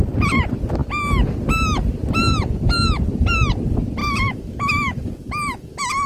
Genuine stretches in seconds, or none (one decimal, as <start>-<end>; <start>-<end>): 0.0-4.0